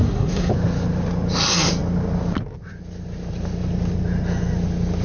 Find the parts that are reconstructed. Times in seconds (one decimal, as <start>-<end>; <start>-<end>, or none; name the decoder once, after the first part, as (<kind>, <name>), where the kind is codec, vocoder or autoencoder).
0.0-0.5 (codec, SNAC)